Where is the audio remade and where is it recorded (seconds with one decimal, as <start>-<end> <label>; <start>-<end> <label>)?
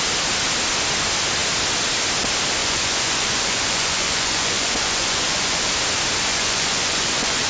0.0-2.6 recorded; 2.6-5.7 remade; 5.7-6.3 recorded; 6.3-7.5 remade